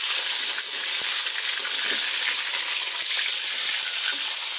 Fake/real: real